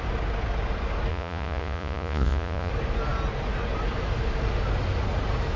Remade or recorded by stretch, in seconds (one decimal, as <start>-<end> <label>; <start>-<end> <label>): 0.0-1.1 recorded; 1.1-2.7 remade; 2.7-5.6 recorded